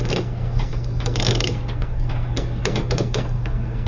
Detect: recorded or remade remade